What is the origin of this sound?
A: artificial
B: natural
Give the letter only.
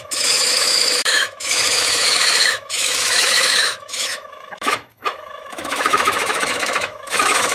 A